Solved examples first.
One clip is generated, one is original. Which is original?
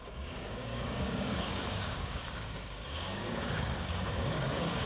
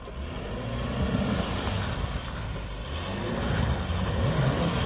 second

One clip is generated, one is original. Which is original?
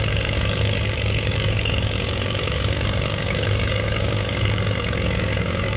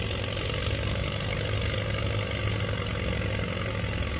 second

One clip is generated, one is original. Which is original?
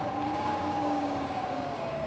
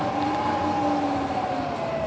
second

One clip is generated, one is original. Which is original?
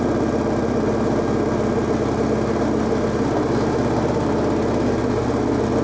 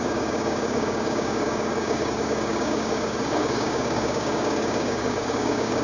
first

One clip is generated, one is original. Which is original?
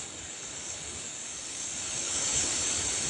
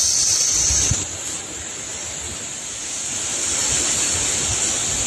second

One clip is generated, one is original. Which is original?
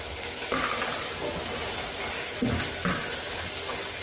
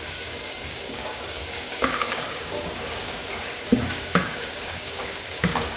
first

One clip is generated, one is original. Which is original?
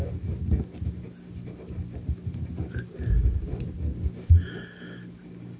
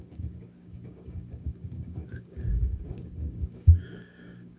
first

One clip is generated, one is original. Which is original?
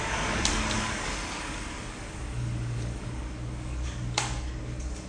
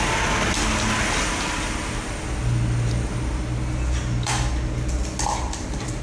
second